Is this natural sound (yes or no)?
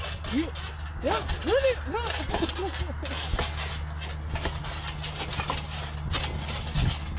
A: yes